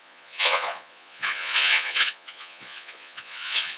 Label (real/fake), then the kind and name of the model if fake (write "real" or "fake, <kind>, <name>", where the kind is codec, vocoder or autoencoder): fake, vocoder, Vocos